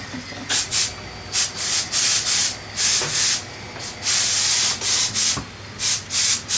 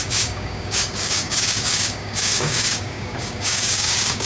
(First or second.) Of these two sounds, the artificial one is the second